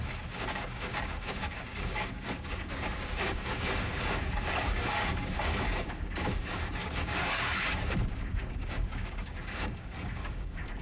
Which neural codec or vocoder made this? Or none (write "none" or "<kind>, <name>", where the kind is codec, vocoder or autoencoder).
codec, DAC